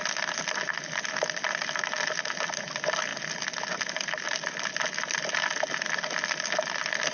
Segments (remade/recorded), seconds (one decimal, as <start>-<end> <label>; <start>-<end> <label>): 0.0-7.1 recorded